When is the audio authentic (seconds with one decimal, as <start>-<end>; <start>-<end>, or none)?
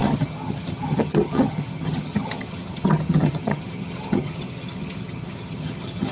none